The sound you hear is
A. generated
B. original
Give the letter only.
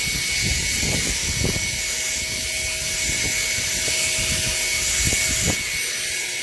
B